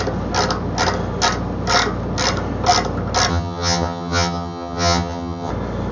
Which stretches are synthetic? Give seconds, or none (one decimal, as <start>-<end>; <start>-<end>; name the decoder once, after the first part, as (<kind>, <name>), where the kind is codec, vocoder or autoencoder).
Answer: 3.3-5.5 (vocoder, HiFi-GAN)